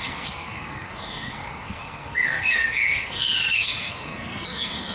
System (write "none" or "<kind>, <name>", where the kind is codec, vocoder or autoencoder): codec, SNAC